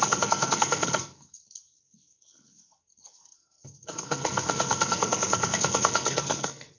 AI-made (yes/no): yes